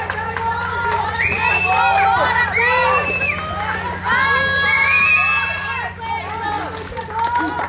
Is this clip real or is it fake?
real